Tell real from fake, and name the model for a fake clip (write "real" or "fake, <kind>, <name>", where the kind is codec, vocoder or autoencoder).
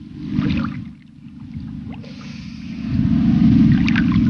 real